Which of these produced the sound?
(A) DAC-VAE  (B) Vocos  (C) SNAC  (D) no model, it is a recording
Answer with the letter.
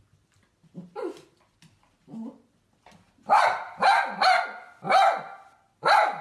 D